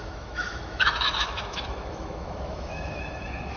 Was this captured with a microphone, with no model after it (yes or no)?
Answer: no